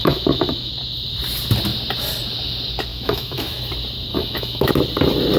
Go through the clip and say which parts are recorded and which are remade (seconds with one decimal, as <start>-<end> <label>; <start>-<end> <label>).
0.0-0.7 remade; 0.7-2.9 recorded; 2.9-3.6 remade; 3.6-4.1 recorded; 4.1-4.7 remade; 4.7-5.4 recorded